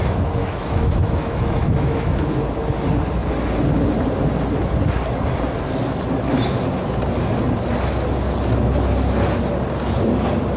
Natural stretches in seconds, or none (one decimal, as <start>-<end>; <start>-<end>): 0.0-0.4; 2.2-10.6